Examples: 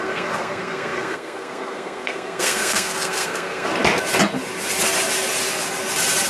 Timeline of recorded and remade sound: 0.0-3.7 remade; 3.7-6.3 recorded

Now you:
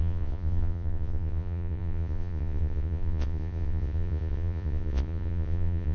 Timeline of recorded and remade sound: 0.0-5.9 remade

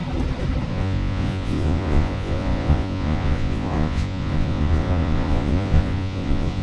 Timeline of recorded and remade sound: 0.0-0.7 recorded; 0.7-6.6 remade

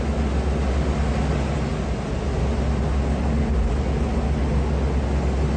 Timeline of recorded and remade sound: 0.0-5.6 recorded